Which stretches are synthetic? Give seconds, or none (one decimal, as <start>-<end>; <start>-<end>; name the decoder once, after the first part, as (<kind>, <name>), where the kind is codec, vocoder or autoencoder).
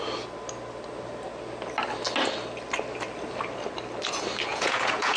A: 4.5-5.2 (vocoder, Vocos)